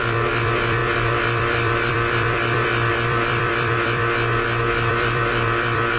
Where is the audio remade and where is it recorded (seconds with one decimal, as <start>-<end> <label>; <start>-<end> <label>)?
0.0-4.0 remade; 4.0-4.9 recorded; 4.9-6.0 remade